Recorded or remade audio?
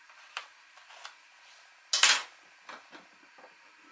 recorded